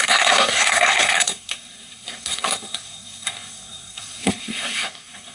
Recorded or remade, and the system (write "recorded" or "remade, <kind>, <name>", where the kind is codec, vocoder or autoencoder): remade, codec, SNAC